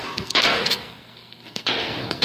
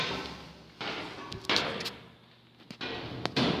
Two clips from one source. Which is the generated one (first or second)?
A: first